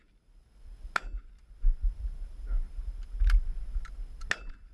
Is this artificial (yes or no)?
no